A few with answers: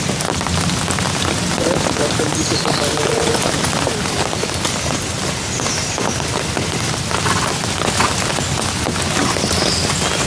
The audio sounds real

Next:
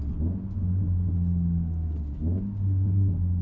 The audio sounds real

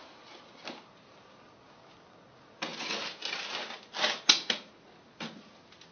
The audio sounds real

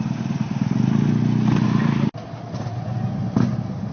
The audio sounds real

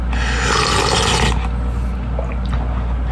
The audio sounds real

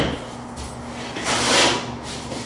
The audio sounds real